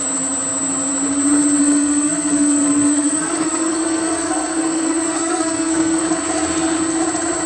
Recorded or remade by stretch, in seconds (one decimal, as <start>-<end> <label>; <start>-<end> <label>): 0.0-1.6 recorded; 1.6-6.0 remade; 6.0-7.5 recorded

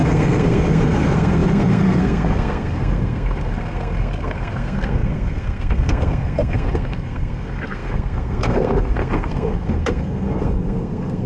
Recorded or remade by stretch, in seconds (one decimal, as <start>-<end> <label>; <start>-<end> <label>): 0.0-11.3 remade

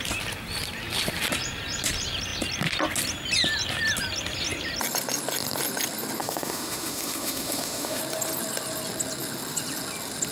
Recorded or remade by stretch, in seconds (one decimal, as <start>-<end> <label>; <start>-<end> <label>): 0.0-6.2 recorded; 6.2-8.0 remade; 8.0-10.3 recorded